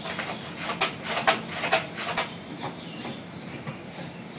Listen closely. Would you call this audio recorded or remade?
recorded